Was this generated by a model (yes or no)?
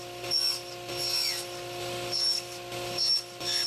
no